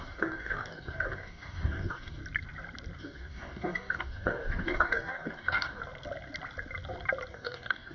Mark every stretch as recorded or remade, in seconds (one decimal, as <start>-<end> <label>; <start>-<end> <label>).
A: 0.0-2.2 remade; 2.2-3.0 recorded; 3.0-5.8 remade; 5.8-7.3 recorded; 7.3-7.9 remade